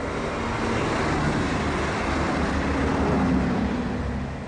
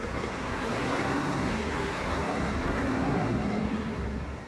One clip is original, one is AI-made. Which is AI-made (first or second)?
second